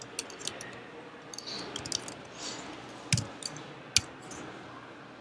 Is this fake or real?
real